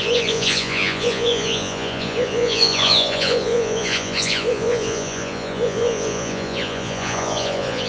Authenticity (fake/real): fake